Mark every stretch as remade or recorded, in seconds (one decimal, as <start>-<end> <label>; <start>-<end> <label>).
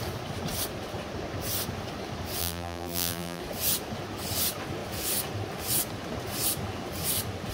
0.0-2.4 recorded; 2.4-3.4 remade; 3.4-7.5 recorded